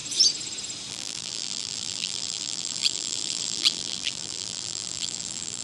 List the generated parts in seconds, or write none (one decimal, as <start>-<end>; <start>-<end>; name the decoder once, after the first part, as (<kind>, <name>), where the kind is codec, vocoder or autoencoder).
0.9-5.6 (vocoder, BigVGAN v2)